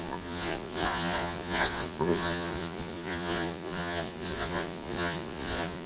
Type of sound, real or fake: fake